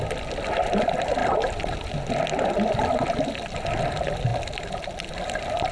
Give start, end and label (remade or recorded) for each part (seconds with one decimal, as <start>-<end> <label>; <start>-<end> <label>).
0.0-5.7 recorded